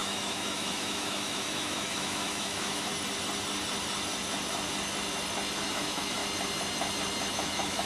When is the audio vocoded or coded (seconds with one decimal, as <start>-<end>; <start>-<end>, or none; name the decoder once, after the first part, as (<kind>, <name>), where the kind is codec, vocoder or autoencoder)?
0.0-2.9 (autoencoder, DAC-VAE); 5.7-6.2; 7.3-7.9